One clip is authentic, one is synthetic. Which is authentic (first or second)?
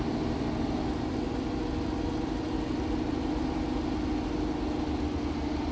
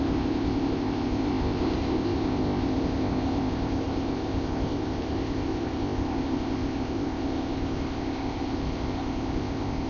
first